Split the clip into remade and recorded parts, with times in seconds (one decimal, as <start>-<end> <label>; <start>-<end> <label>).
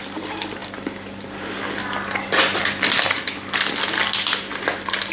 0.0-5.1 recorded